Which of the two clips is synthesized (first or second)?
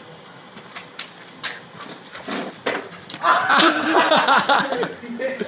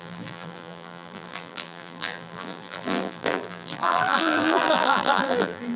second